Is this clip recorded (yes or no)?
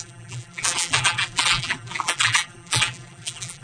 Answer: no